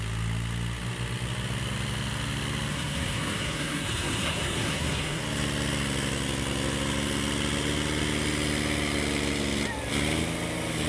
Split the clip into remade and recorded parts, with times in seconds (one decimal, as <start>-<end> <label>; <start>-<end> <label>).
0.0-2.7 recorded; 2.7-5.2 remade; 5.2-10.9 recorded